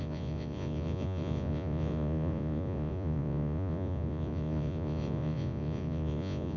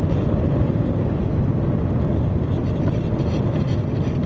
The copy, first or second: first